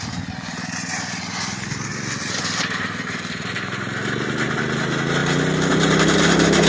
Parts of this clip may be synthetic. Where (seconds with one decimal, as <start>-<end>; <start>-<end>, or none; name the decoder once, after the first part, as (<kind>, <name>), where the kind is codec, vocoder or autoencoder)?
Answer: 1.9-3.5 (vocoder, BigVGAN v2)